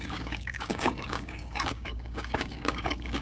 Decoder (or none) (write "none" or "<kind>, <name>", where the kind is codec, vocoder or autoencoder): codec, DAC